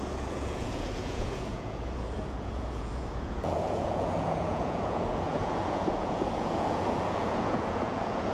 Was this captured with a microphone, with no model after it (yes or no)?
no